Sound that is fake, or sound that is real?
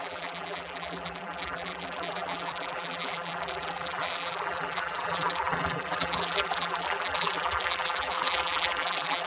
fake